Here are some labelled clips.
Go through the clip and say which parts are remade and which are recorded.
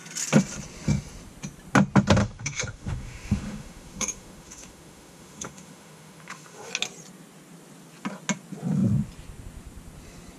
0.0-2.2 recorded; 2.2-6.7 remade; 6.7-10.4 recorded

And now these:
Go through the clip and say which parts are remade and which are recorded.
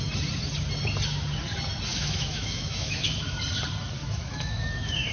0.0-1.9 recorded; 1.9-3.4 remade; 3.4-4.0 recorded; 4.0-5.1 remade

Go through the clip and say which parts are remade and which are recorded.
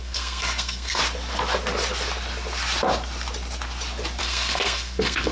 0.0-1.0 remade; 1.0-4.2 recorded; 4.2-5.3 remade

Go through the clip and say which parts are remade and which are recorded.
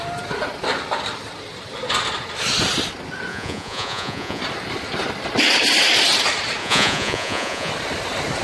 0.0-3.3 recorded; 3.3-4.4 remade; 4.4-6.6 recorded; 6.6-7.7 remade; 7.7-8.4 recorded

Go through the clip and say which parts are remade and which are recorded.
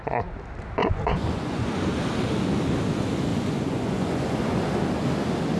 0.0-0.8 recorded; 0.8-1.7 remade; 1.7-3.3 recorded; 3.3-4.7 remade; 4.7-5.6 recorded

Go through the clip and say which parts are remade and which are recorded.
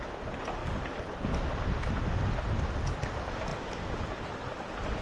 0.0-5.0 recorded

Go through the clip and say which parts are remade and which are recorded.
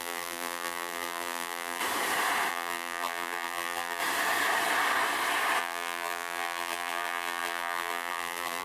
0.0-1.8 remade; 1.8-2.5 recorded; 2.5-4.0 remade; 4.0-5.6 recorded; 5.6-8.6 remade